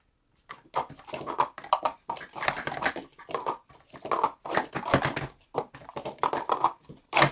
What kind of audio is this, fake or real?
real